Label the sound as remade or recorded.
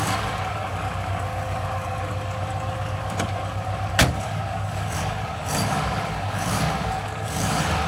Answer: remade